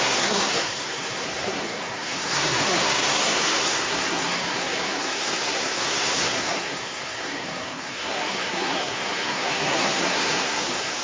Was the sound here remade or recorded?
remade